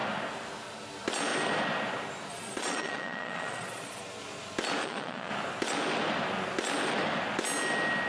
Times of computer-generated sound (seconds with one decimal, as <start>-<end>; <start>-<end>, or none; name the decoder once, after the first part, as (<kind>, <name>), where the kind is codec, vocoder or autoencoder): 2.3-4.0 (vocoder, Vocos); 4.8-5.3